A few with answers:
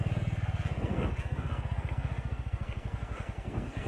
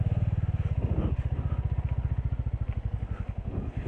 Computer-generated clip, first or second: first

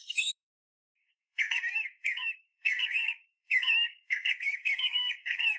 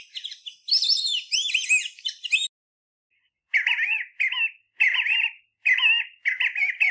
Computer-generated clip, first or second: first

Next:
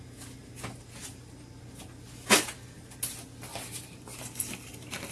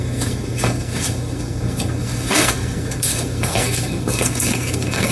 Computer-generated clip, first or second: second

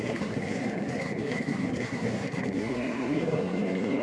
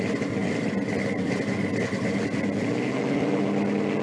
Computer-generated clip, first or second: first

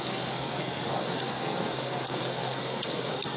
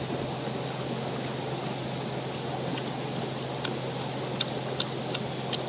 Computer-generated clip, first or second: first